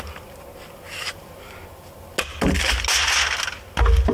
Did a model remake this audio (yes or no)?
no